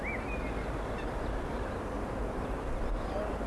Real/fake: real